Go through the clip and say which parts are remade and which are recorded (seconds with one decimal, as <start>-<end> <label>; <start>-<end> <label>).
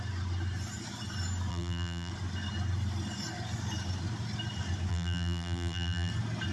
0.0-1.5 recorded; 1.5-2.1 remade; 2.1-4.9 recorded; 4.9-6.1 remade; 6.1-6.5 recorded